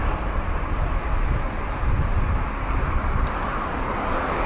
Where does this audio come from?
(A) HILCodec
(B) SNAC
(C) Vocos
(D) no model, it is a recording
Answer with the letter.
D